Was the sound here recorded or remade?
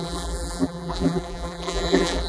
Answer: remade